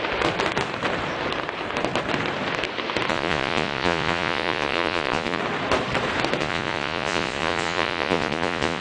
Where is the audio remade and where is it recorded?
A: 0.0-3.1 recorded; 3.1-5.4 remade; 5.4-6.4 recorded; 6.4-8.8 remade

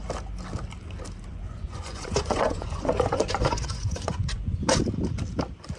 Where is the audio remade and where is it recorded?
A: 0.0-1.3 recorded; 1.3-4.8 remade; 4.8-5.8 recorded

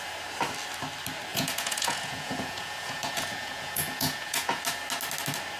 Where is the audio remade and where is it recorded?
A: 0.0-1.3 recorded; 1.3-4.6 remade; 4.6-5.6 recorded

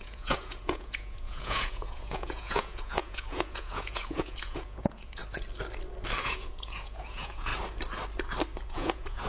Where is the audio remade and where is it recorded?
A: 0.0-5.2 remade; 5.2-6.2 recorded; 6.2-7.5 remade; 7.5-8.7 recorded; 8.7-9.3 remade

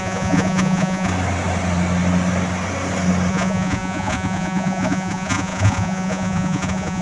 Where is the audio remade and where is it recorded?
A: 0.0-1.1 remade; 1.1-3.3 recorded; 3.3-7.0 remade